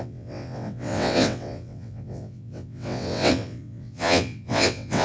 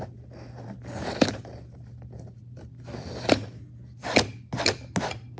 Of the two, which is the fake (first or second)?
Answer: first